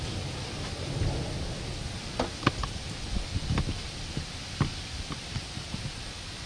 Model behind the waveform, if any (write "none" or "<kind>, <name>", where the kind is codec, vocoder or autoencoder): none